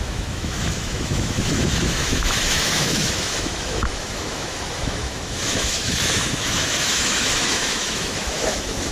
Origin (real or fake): fake